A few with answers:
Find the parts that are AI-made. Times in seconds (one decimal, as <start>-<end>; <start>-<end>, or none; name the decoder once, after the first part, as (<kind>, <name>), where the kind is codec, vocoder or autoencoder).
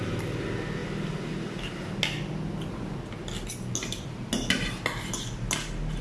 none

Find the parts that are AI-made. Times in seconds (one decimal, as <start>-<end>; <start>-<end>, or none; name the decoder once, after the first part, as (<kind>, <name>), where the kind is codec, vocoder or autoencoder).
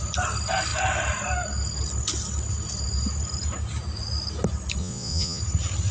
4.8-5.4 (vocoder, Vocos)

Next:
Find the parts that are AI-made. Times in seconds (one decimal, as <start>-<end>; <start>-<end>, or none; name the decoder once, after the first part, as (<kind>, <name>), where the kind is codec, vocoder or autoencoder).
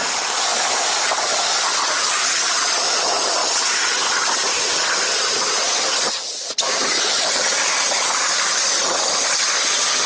0.5-1.2 (vocoder, BigVGAN v2); 3.4-6.5